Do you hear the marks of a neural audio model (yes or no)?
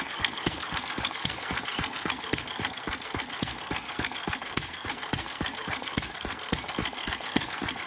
yes